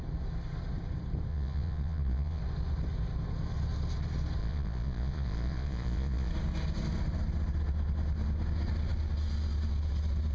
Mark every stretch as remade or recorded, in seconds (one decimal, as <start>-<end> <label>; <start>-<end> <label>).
0.0-1.3 recorded; 1.3-2.4 remade; 2.4-4.4 recorded; 4.4-6.3 remade; 6.3-10.3 recorded